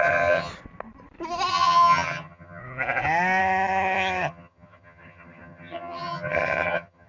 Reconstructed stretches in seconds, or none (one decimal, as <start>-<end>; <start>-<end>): 0.0-0.5; 1.5-2.6; 3.4-7.1